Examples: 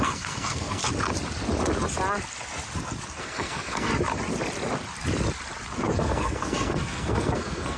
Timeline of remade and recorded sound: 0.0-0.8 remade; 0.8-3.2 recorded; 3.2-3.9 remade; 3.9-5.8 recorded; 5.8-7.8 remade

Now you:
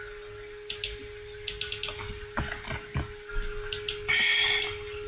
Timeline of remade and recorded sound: 0.0-5.1 recorded

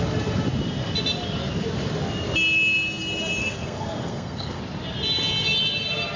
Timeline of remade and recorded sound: 0.0-3.4 recorded; 3.4-4.6 remade; 4.6-6.2 recorded

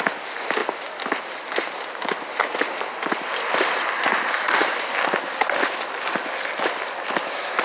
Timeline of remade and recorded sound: 0.0-7.6 recorded

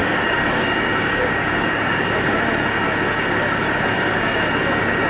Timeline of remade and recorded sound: 0.0-2.4 remade; 2.4-3.9 recorded; 3.9-4.4 remade; 4.4-5.1 recorded

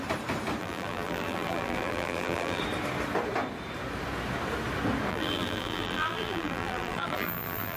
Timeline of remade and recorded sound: 0.0-0.6 recorded; 0.6-2.6 remade; 2.6-5.1 recorded; 5.1-7.8 remade